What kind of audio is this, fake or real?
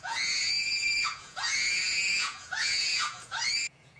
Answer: fake